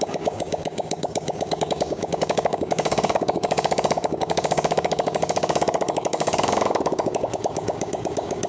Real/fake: fake